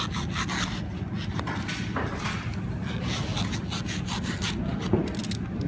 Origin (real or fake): real